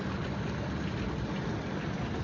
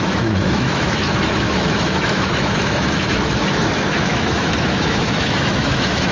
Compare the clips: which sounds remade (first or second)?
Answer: second